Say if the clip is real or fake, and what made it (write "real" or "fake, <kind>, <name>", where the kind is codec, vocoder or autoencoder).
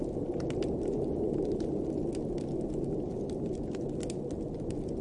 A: real